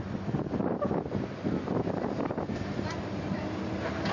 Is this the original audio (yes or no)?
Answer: yes